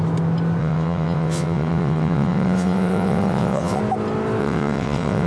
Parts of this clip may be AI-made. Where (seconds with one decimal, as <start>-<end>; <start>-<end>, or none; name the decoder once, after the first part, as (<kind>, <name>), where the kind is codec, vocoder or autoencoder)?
0.6-3.8 (vocoder, WaveNeXt); 4.4-5.3

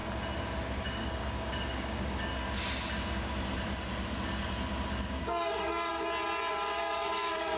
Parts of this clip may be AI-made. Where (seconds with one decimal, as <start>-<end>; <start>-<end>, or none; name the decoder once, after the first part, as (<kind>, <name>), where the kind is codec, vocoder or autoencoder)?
0.8-2.3 (codec, DAC); 5.1-5.9; 6.5-7.6